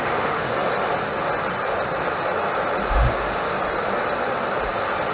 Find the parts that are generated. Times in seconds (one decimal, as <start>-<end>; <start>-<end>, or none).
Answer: 0.0-0.5; 2.9-3.5

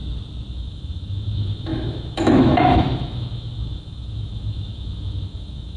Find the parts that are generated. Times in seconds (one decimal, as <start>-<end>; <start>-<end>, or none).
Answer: 0.5-5.8

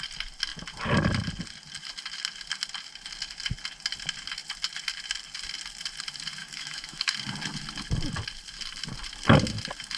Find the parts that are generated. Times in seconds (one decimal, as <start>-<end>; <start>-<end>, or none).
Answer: 6.4-7.1

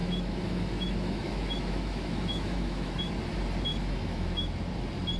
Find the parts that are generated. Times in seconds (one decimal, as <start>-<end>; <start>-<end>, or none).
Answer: 0.0-3.1; 3.7-4.5

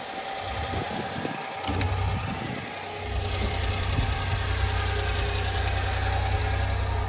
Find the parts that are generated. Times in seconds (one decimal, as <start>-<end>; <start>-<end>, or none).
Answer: none

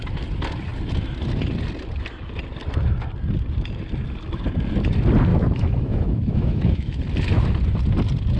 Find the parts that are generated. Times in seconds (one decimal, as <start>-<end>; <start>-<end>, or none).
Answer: 5.3-7.0

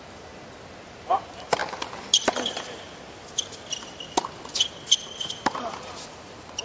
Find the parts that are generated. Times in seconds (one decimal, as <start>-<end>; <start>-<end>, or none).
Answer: none

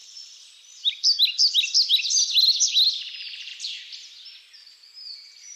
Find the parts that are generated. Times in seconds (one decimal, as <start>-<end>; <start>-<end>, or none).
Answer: none